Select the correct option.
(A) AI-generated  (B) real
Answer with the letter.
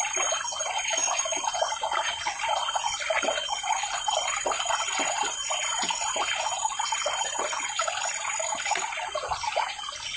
B